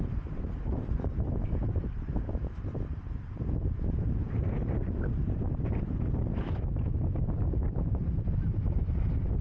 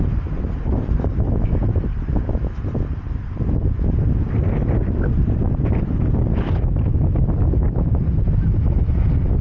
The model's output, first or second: first